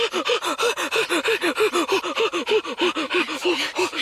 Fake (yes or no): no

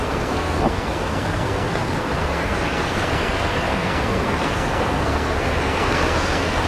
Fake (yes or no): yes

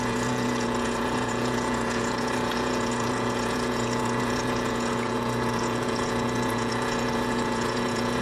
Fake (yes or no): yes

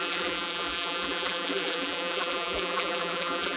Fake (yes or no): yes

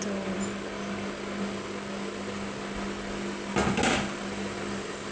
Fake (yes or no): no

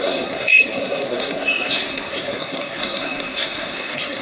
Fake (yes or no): yes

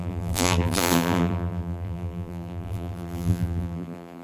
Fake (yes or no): yes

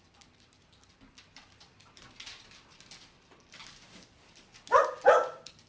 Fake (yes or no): yes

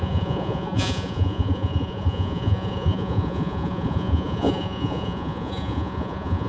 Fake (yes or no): yes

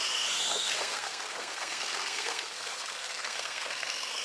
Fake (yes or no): yes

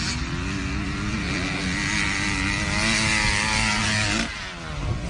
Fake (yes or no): no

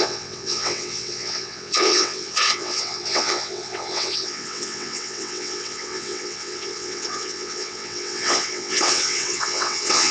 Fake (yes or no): yes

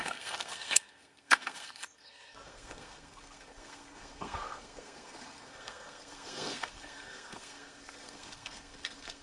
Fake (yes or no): yes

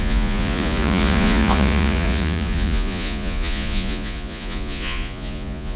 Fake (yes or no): yes